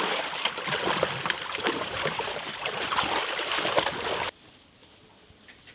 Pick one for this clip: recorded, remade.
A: remade